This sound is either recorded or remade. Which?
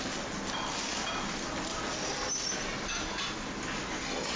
recorded